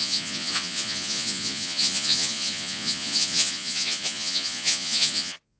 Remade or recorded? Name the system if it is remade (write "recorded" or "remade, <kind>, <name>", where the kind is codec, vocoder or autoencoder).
remade, vocoder, Vocos